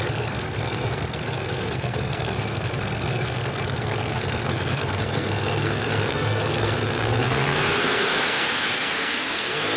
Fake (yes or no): yes